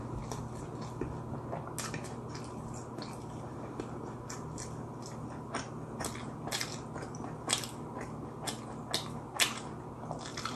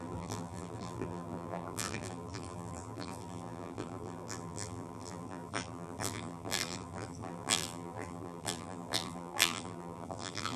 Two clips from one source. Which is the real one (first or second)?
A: first